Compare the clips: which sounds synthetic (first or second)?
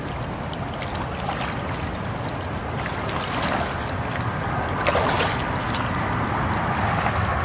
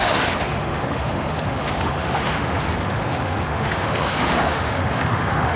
second